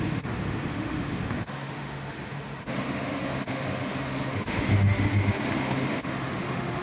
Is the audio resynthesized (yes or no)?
yes